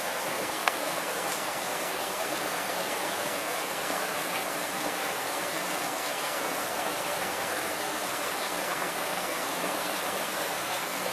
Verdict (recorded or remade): remade